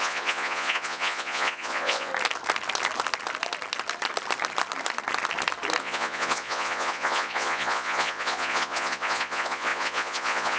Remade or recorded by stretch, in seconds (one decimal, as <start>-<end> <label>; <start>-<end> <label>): 0.0-2.1 remade; 2.1-5.8 recorded; 5.8-10.6 remade